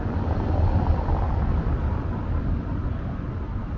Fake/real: real